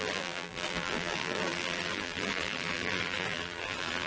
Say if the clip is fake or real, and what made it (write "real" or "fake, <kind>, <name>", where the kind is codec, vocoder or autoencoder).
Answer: fake, vocoder, BigVGAN v2